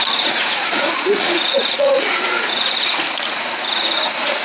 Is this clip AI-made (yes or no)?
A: yes